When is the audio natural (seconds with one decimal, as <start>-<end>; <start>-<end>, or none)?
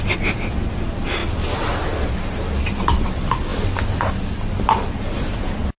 0.0-5.8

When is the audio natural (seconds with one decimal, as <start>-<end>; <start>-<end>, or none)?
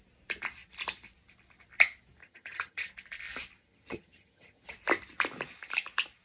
0.0-2.2; 2.9-3.6; 4.7-6.2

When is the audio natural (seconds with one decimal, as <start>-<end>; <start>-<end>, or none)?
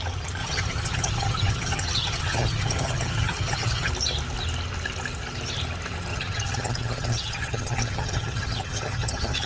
0.0-0.4; 3.9-6.1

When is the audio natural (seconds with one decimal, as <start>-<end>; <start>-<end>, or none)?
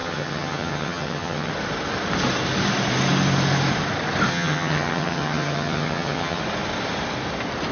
1.5-4.3; 6.4-7.7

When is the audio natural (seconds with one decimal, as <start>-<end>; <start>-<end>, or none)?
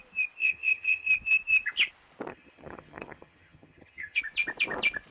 0.0-0.4; 1.1-2.3; 4.2-5.1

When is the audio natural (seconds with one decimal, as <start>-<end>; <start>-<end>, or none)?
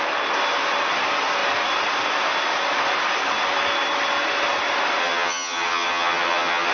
0.0-5.0